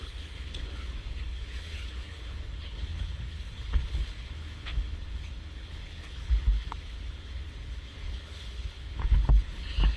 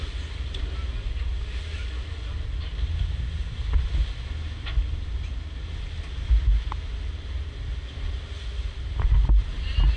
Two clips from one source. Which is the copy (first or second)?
first